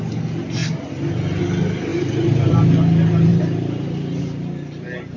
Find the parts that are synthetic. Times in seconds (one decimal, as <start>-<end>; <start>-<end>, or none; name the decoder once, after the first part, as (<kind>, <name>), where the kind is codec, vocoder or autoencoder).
1.9-2.6 (vocoder, BigVGAN v2); 3.3-4.2